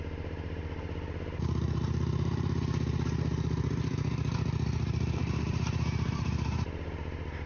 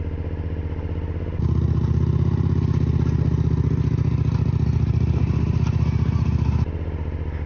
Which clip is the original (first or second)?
second